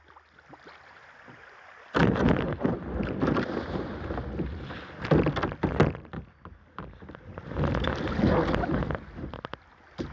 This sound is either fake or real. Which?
real